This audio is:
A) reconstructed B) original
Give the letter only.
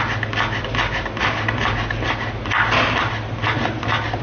B